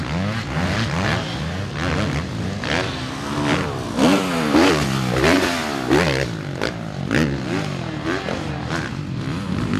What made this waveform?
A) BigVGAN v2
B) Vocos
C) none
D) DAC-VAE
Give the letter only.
C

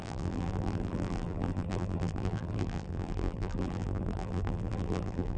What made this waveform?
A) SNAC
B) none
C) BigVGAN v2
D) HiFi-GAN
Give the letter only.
C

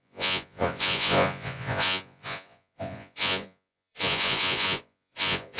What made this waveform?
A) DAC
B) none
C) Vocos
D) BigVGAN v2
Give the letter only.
C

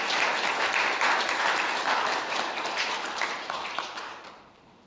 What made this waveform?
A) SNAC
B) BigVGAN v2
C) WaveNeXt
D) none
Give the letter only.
B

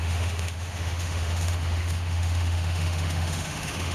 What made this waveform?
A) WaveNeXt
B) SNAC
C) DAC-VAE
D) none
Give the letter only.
C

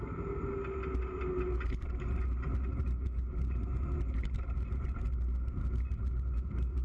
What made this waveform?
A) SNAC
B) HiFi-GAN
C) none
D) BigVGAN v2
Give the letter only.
C